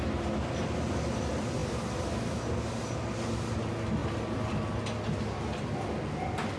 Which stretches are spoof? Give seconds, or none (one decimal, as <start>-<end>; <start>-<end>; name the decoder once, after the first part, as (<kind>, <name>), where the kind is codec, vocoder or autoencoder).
none

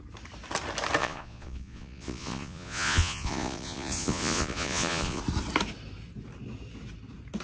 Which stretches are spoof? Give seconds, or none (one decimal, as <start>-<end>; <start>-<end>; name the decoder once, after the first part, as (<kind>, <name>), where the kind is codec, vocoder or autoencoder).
1.0-5.2 (vocoder, Vocos)

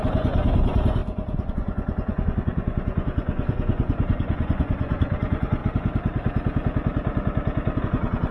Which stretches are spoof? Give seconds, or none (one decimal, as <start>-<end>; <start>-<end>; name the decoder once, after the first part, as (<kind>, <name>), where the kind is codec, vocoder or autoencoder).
0.0-1.0 (vocoder, Vocos); 1.5-5.6; 7.8-8.3

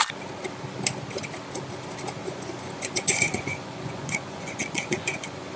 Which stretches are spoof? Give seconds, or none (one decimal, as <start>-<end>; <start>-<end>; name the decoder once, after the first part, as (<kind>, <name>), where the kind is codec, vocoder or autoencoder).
2.2-5.6 (vocoder, Vocos)

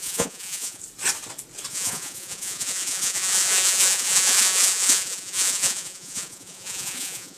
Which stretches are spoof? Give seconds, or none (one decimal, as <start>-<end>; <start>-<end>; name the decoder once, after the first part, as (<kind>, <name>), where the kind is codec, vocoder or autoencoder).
0.0-0.8 (vocoder, Vocos); 1.7-7.4

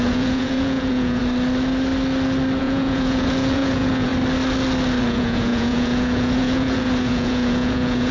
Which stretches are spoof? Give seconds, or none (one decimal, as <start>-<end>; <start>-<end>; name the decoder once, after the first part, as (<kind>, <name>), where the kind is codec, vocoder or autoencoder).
0.0-1.2 (vocoder, Vocos); 2.6-4.1; 5.0-8.1